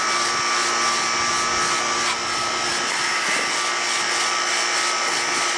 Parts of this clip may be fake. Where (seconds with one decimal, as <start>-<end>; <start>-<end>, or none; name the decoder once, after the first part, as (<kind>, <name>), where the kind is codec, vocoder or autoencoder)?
none